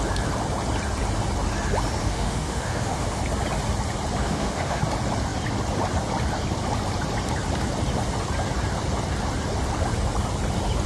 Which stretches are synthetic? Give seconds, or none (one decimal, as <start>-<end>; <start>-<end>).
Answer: 2.0-3.2; 4.2-4.8